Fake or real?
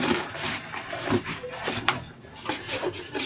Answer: fake